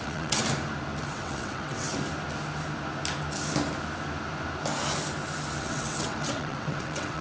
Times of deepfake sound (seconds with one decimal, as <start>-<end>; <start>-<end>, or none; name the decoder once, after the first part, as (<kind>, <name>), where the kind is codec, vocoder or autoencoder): 0.0-0.4 (vocoder, WaveNeXt); 1.0-1.9; 5.6-7.2